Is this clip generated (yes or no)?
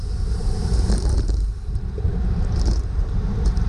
yes